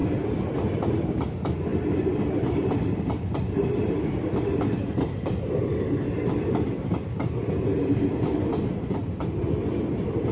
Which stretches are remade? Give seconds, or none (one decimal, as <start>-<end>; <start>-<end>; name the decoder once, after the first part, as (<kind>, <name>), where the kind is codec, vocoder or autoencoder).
none